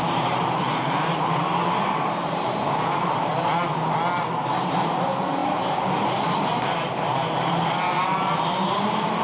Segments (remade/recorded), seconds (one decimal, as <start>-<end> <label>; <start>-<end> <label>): 0.0-3.3 remade; 3.3-4.1 recorded; 4.1-9.2 remade